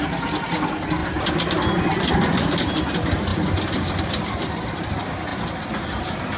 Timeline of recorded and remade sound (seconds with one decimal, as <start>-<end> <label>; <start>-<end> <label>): 0.0-1.0 recorded; 1.0-2.4 remade; 2.4-3.3 recorded; 3.3-4.5 remade; 4.5-5.3 recorded; 5.3-6.0 remade; 6.0-6.4 recorded